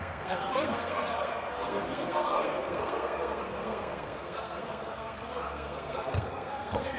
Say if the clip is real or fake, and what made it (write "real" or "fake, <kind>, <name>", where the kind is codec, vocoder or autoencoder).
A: fake, codec, SNAC